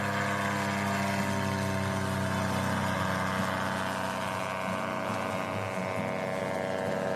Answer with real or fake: real